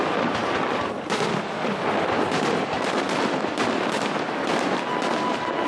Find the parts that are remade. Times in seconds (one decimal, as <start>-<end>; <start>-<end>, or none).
none